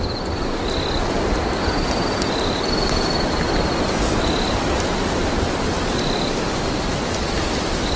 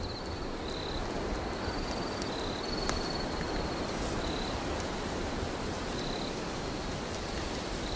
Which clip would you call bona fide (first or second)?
first